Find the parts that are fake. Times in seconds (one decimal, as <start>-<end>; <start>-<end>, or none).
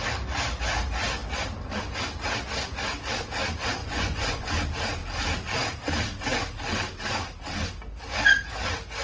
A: 3.8-4.5